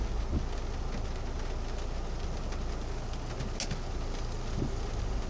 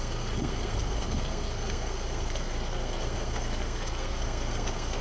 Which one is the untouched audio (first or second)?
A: first